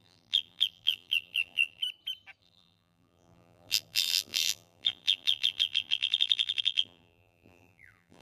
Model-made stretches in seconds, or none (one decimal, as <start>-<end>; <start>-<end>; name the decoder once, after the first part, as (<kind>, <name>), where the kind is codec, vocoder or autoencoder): 0.0-1.8 (vocoder, BigVGAN v2); 2.4-8.2